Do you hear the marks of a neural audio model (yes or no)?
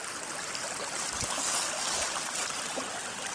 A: no